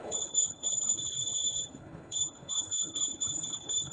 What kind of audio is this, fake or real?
fake